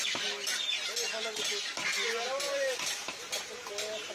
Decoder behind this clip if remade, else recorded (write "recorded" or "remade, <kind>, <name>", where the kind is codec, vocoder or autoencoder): recorded